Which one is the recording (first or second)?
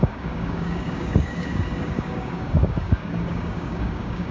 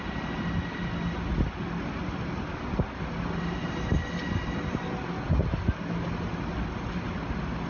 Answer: second